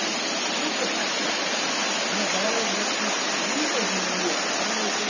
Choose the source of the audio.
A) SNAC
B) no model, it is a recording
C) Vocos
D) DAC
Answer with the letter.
B